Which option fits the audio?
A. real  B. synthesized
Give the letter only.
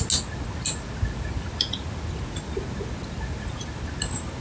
A